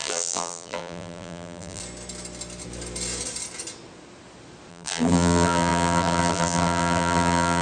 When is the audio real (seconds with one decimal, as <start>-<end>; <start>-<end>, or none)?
1.8-4.7